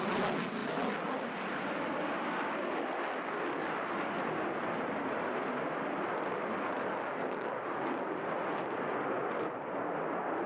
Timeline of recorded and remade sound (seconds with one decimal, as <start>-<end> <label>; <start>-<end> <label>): 0.0-10.5 recorded